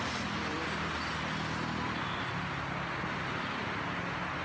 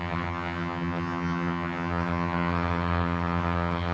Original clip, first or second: first